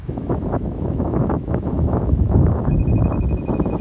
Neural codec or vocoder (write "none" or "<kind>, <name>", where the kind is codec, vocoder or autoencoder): autoencoder, DAC-VAE